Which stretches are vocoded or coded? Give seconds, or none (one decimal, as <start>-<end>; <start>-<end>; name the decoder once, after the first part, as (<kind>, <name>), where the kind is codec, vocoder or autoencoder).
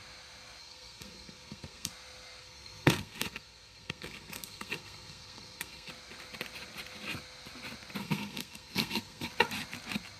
0.6-1.9 (codec, SNAC); 2.4-5.9; 8.0-9.3